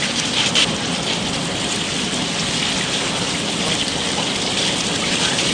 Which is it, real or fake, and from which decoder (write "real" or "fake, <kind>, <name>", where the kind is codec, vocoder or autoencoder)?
real